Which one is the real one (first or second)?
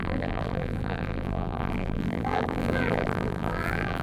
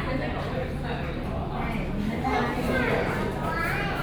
second